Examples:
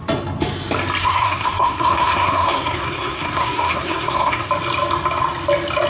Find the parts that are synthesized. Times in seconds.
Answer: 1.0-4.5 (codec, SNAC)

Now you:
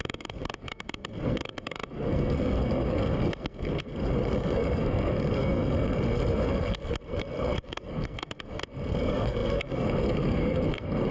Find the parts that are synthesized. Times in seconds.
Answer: 0.0-11.1 (codec, SNAC)

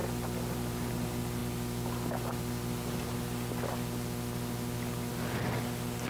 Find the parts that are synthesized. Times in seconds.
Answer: none

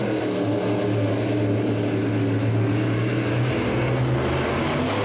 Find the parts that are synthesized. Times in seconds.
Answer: 2.4-3.5 (codec, DAC)

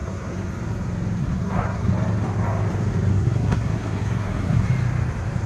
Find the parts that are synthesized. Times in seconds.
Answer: 0.0-0.5 (codec, SNAC); 1.2-1.9; 3.1-4.7

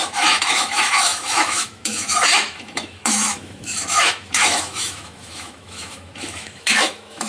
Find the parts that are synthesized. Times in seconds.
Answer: 0.0-7.3 (autoencoder, DAC-VAE)

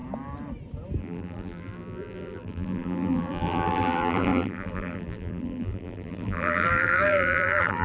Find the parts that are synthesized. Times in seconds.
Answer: 1.0-7.8 (vocoder, BigVGAN v2)

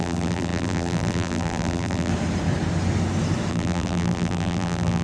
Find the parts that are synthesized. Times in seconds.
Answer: 0.0-2.1 (vocoder, BigVGAN v2); 3.5-5.0